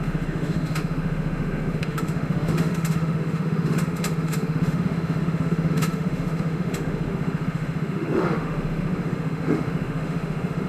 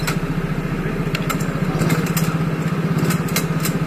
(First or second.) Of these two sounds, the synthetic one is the first